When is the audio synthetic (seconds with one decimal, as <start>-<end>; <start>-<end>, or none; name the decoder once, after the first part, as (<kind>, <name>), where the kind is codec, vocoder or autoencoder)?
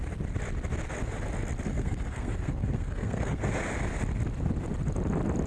1.7-3.5 (codec, SNAC)